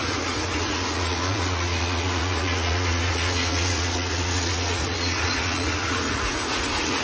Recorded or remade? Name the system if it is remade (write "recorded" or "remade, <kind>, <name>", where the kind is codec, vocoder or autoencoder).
remade, vocoder, Vocos